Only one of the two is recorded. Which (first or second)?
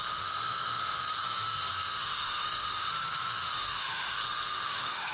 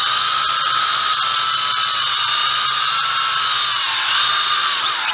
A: second